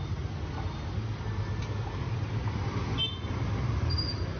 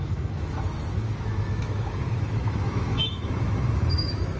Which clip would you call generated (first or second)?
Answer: second